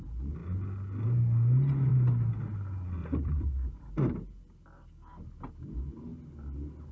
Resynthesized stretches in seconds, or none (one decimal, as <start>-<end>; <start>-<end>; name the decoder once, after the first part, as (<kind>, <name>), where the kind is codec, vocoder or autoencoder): 3.0-3.9 (vocoder, BigVGAN v2)